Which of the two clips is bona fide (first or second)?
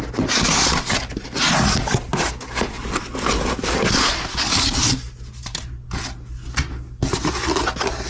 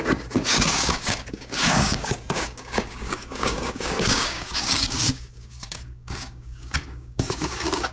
first